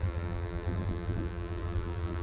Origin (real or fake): fake